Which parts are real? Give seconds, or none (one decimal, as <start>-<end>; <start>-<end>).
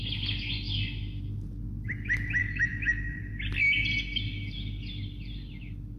0.0-2.4; 3.2-6.0